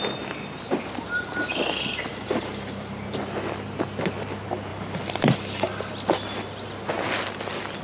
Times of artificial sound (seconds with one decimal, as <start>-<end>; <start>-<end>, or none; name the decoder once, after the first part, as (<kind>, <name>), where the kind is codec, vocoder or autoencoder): 2.1-3.2 (vocoder, BigVGAN v2); 4.7-5.9